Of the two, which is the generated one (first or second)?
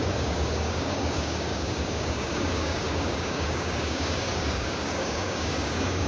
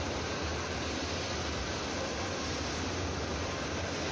first